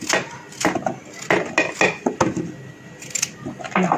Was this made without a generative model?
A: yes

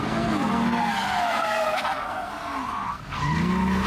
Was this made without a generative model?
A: no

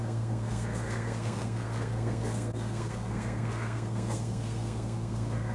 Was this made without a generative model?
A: no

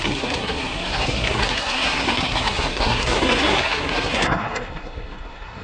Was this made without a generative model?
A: no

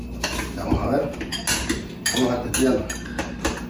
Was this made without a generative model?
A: yes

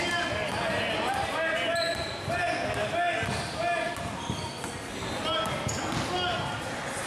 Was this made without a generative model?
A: yes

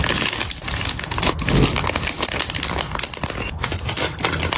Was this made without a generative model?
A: yes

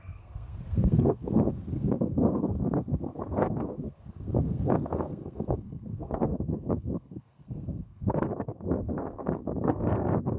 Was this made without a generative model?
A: no